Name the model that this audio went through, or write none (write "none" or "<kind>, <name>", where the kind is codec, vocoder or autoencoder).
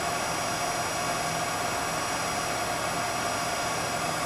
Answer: none